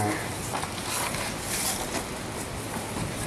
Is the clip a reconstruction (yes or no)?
no